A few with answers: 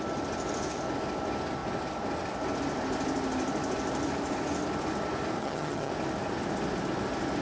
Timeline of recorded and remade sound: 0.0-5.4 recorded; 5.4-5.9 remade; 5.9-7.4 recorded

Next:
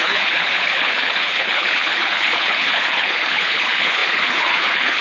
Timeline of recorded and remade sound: 0.0-5.0 remade

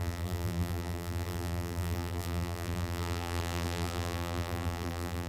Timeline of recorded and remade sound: 0.0-5.3 remade